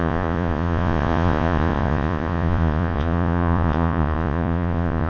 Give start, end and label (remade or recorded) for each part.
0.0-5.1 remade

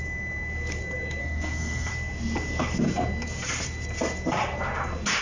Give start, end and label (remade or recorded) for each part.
0.0-1.2 recorded; 1.2-1.9 remade; 1.9-5.2 recorded

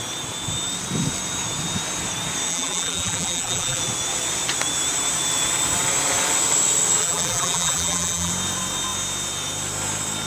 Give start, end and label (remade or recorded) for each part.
0.0-2.5 recorded; 2.5-3.8 remade; 3.8-7.0 recorded; 7.0-8.3 remade; 8.3-10.3 recorded

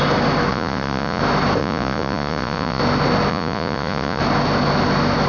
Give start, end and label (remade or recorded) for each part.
0.0-0.5 recorded; 0.5-1.2 remade; 1.2-1.6 recorded; 1.6-2.8 remade; 2.8-3.3 recorded; 3.3-4.2 remade; 4.2-5.3 recorded

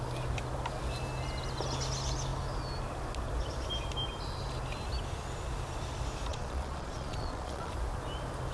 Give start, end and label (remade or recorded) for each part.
0.0-6.3 recorded; 6.3-7.7 remade; 7.7-8.5 recorded

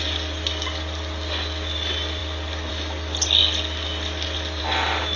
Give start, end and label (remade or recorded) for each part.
0.0-5.2 recorded

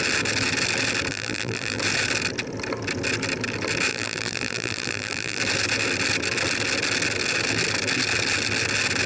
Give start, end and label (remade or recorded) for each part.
0.0-1.1 recorded; 1.1-1.8 remade; 1.8-3.9 recorded; 3.9-5.4 remade; 5.4-9.1 recorded